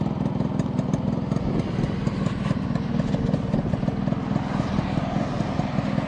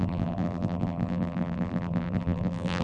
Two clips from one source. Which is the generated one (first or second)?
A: second